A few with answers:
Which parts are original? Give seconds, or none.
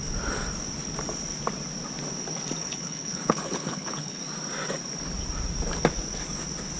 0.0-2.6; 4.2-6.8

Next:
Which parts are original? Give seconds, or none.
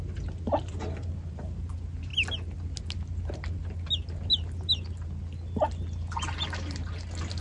0.0-7.4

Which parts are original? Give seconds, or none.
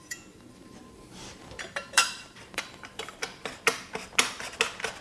0.0-0.6; 2.6-5.0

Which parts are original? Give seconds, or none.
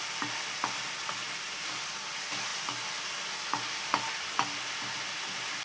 0.0-5.6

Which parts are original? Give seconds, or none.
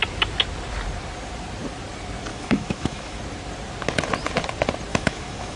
0.0-2.3; 3.2-4.9